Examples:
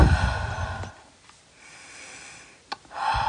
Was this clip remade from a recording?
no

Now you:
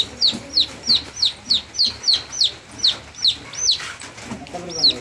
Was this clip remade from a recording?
no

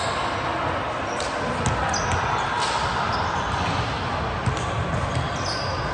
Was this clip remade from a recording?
no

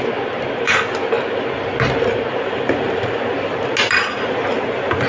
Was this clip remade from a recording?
no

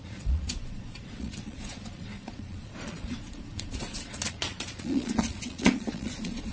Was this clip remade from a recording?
yes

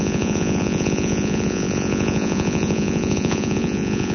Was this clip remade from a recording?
yes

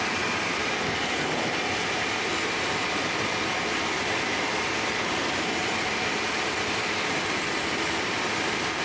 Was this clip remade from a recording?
no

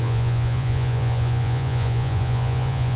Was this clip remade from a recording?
yes